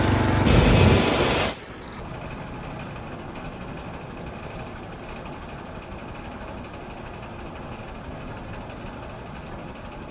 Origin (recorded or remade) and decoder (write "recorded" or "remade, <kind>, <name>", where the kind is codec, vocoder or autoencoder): recorded